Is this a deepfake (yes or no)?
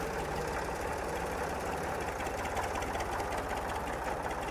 no